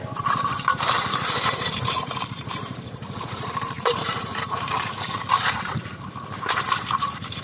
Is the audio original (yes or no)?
no